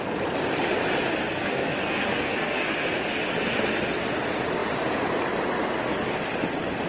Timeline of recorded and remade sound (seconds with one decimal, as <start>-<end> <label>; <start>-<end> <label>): 0.0-1.3 recorded; 1.3-2.9 remade; 2.9-6.9 recorded